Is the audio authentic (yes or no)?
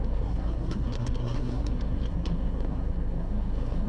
no